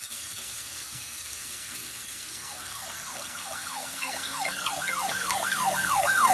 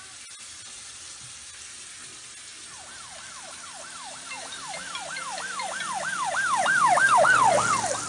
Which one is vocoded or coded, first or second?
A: first